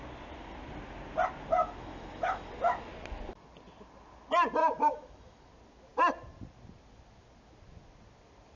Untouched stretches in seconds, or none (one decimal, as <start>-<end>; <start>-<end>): 0.0-1.6; 2.5-4.6; 5.5-8.6